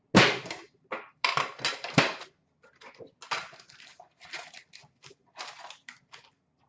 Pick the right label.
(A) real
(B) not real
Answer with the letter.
A